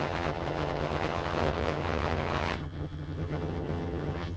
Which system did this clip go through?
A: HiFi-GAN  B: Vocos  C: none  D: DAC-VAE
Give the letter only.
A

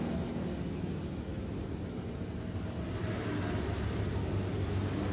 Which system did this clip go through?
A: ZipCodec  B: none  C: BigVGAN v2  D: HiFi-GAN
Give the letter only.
B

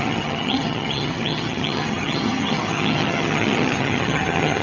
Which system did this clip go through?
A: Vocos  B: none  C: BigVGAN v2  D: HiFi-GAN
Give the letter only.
D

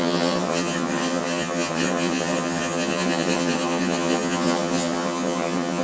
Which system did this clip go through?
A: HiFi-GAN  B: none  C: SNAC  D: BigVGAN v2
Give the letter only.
A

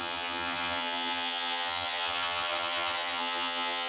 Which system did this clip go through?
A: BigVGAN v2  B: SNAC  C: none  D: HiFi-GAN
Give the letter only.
D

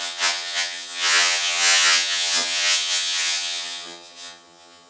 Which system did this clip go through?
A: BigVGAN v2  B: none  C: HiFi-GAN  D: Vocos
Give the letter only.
C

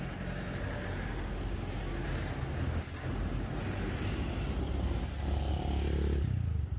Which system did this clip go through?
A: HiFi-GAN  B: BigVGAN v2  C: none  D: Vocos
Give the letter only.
C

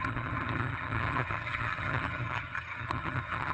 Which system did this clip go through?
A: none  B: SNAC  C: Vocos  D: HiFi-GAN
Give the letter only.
D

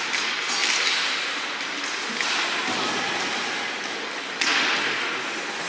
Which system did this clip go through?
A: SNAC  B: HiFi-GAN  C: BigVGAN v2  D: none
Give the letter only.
D